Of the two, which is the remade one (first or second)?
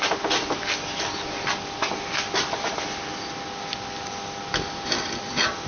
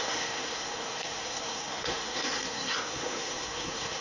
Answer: second